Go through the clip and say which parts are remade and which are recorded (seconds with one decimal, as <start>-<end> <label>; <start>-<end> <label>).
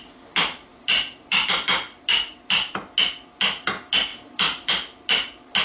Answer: 0.0-5.6 recorded